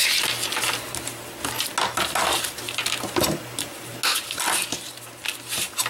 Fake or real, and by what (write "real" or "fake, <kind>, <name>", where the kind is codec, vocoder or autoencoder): real